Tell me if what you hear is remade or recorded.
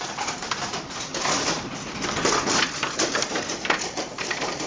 remade